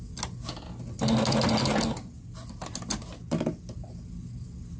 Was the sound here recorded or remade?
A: recorded